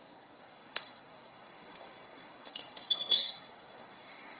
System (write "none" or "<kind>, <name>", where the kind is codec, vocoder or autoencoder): codec, SNAC